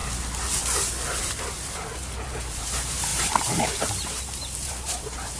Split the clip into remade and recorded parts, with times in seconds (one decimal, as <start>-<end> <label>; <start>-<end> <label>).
0.0-1.2 recorded; 1.2-5.4 remade